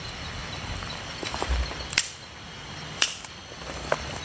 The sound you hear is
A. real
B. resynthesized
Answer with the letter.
B